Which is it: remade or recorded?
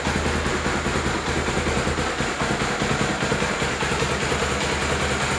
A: recorded